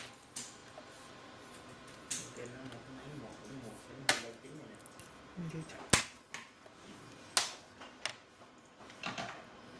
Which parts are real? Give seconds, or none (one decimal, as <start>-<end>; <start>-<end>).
0.0-9.8